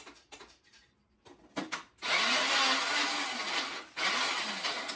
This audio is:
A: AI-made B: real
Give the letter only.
B